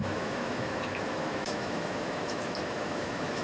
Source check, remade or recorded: remade